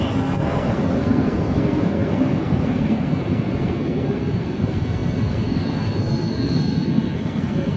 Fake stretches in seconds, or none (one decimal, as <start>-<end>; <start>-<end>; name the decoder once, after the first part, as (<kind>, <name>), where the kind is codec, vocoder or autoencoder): 0.0-7.8 (codec, SNAC)